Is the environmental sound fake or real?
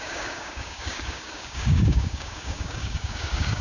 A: fake